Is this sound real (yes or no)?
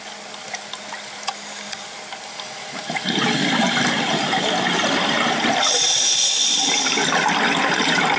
yes